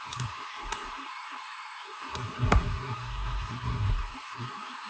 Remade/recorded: remade